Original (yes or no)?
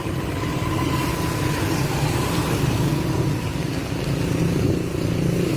yes